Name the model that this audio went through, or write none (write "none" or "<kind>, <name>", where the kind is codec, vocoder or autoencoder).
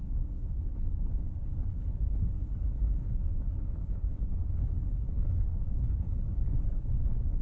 codec, HILCodec